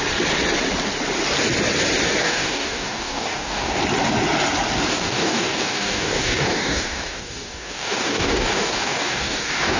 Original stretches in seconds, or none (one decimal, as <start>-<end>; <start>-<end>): 0.0-2.2; 3.8-4.9